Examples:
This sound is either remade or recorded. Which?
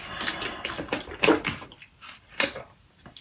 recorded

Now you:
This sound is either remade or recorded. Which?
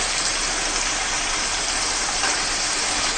recorded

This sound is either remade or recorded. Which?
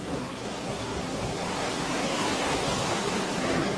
remade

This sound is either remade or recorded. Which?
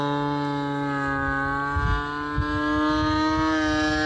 recorded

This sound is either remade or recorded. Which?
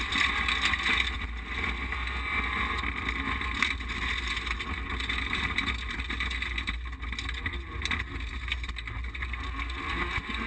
recorded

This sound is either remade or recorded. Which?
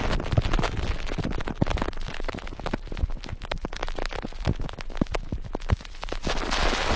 recorded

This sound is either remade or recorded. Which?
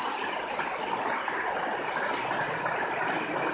recorded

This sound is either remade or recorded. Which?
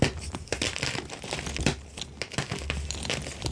recorded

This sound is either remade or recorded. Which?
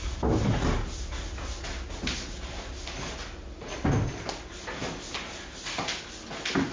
recorded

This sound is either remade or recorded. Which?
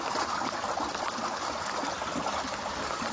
recorded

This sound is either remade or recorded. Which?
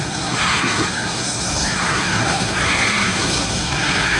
remade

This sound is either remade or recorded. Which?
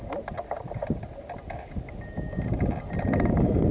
recorded